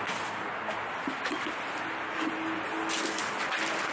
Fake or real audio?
real